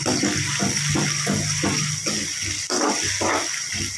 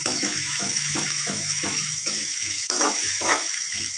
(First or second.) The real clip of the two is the first